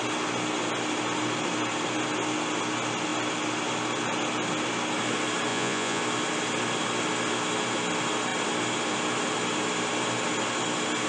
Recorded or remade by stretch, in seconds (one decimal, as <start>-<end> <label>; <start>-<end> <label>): 0.0-5.5 recorded; 5.5-6.0 remade; 6.0-11.1 recorded